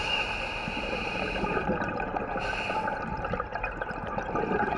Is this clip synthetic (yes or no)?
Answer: no